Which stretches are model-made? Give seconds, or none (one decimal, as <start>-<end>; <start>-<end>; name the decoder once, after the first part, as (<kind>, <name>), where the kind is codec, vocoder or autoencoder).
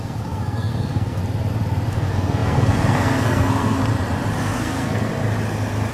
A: 0.0-1.2 (codec, SNAC); 1.9-3.8; 4.4-5.1